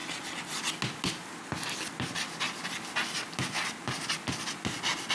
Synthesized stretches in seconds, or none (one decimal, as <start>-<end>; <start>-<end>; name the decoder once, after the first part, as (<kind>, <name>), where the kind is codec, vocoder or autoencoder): none